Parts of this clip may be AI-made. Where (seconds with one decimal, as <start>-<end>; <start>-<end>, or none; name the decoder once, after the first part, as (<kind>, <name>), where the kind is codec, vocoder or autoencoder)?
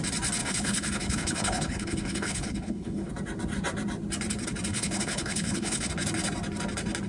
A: 0.4-3.1 (codec, HILCodec); 4.7-5.9